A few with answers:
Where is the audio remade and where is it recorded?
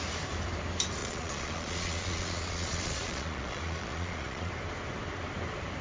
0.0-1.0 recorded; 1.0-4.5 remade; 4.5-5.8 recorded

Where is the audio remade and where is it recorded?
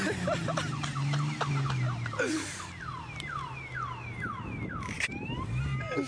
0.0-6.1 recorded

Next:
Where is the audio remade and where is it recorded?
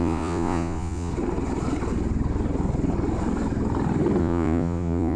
0.0-1.1 remade; 1.1-4.2 recorded; 4.2-5.2 remade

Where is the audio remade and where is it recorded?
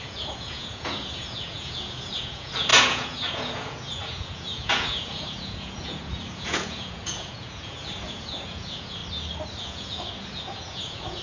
0.0-9.0 remade; 9.0-9.6 recorded; 9.6-11.2 remade